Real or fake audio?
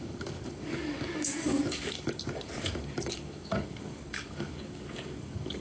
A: fake